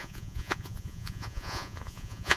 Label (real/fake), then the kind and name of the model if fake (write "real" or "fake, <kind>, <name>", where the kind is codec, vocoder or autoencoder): fake, vocoder, Vocos